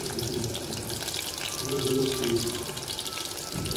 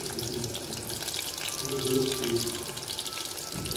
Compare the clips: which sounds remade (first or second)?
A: first